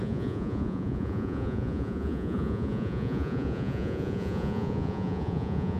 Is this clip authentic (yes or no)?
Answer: no